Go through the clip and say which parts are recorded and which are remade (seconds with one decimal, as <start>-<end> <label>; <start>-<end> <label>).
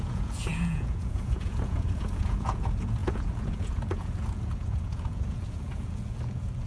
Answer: 0.0-6.7 remade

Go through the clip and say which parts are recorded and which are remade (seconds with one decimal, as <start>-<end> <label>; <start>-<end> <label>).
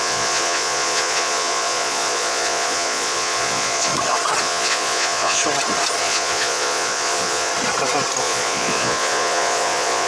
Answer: 0.0-3.9 remade; 3.9-4.4 recorded; 4.4-5.4 remade; 5.4-6.0 recorded; 6.0-7.5 remade; 7.5-8.2 recorded; 8.2-10.1 remade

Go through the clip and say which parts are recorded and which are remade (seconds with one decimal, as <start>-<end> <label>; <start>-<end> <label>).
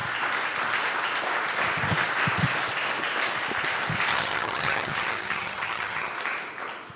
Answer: 0.0-4.1 recorded; 4.1-6.1 remade; 6.1-7.0 recorded